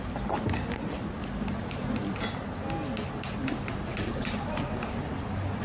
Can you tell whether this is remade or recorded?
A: recorded